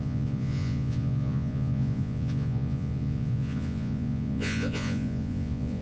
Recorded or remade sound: remade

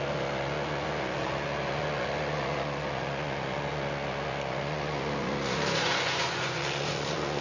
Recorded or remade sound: remade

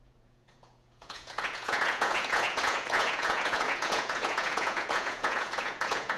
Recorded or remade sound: remade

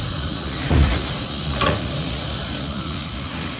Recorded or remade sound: remade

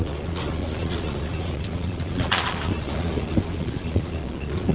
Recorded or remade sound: remade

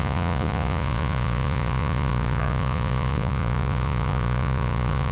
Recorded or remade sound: remade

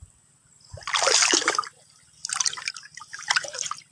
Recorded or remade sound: recorded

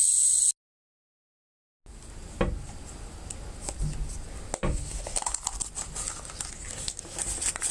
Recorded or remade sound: recorded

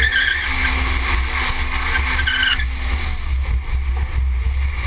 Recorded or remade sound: recorded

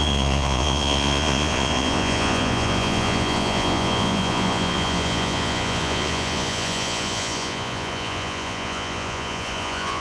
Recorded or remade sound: remade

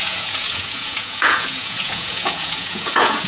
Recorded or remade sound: remade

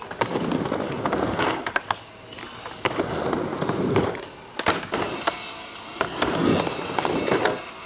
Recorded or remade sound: recorded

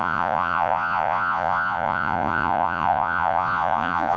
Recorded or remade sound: remade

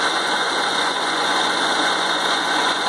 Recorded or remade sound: remade